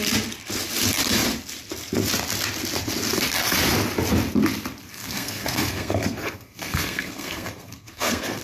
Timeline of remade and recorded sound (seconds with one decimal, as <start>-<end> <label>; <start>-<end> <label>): 0.0-4.9 recorded; 4.9-8.4 remade